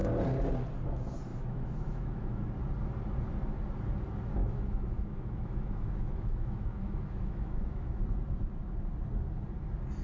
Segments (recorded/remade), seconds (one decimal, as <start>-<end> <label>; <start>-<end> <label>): 0.0-1.3 recorded; 1.3-2.5 remade; 2.5-4.4 recorded; 4.4-8.0 remade; 8.0-10.0 recorded